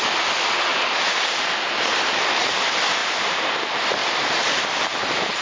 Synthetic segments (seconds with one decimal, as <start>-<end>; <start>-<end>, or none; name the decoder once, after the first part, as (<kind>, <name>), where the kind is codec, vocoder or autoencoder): 0.7-1.5 (vocoder, BigVGAN v2); 3.0-3.6; 4.0-5.4